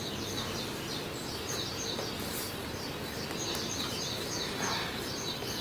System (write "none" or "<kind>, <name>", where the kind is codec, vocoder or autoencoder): none